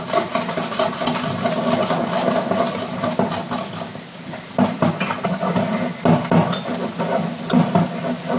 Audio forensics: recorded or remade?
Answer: recorded